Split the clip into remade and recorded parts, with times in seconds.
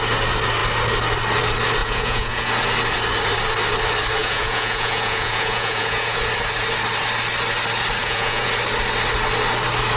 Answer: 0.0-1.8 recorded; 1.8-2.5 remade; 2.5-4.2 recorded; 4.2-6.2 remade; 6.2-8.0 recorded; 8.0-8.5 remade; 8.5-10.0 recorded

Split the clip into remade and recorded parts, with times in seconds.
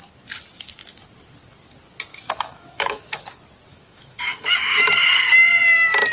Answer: 0.0-2.1 recorded; 2.1-3.2 remade; 3.2-3.7 recorded; 3.7-4.8 remade; 4.8-6.1 recorded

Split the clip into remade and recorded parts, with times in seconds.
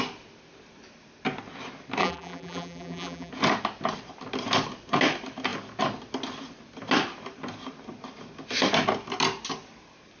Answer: 0.0-2.0 recorded; 2.0-3.3 remade; 3.3-10.2 recorded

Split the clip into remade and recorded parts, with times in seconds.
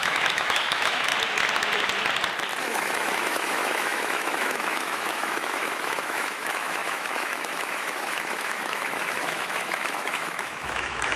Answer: 0.0-1.1 remade; 1.1-2.6 recorded; 2.6-11.2 remade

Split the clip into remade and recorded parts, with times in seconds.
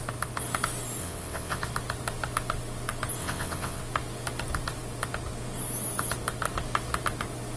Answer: 0.0-1.0 recorded; 1.0-1.6 remade; 1.6-3.2 recorded; 3.2-3.8 remade; 3.8-7.6 recorded